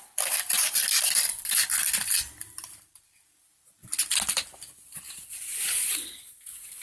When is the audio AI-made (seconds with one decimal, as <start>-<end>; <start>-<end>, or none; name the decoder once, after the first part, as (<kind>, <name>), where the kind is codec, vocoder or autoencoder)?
0.0-3.8 (vocoder, BigVGAN v2); 5.8-6.8